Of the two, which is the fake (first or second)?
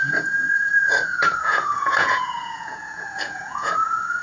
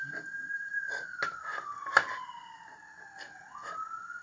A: first